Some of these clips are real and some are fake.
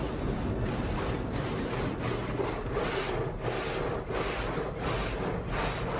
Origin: real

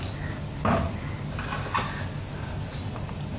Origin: real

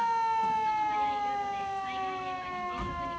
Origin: real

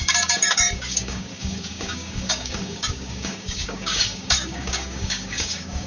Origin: fake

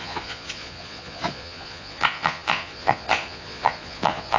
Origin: fake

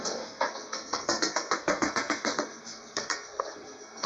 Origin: fake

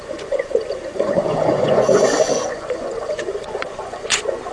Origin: fake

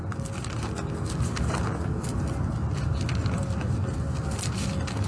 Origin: real